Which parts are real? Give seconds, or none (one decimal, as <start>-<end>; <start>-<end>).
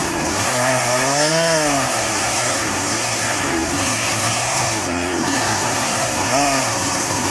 none